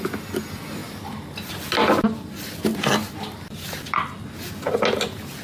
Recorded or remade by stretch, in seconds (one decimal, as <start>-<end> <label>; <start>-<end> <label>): 0.0-5.4 recorded